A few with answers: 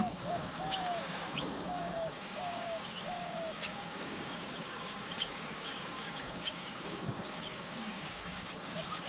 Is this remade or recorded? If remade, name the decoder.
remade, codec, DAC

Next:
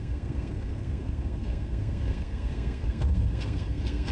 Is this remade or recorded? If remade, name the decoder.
remade, codec, SNAC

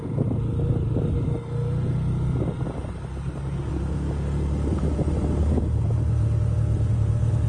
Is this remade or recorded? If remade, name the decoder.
recorded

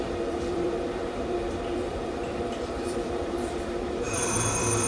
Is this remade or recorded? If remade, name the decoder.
remade, vocoder, BigVGAN v2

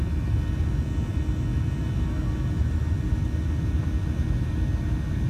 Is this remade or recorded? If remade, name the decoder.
recorded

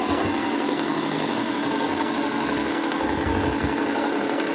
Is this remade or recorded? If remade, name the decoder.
remade, codec, SNAC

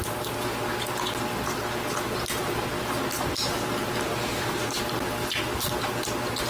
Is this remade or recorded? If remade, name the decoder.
recorded